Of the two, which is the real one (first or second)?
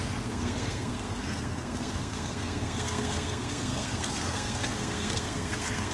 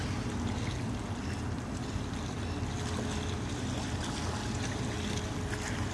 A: second